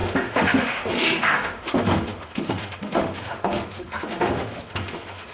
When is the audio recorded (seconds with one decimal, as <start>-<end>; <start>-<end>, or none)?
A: none